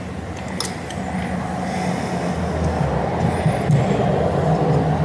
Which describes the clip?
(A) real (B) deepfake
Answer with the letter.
A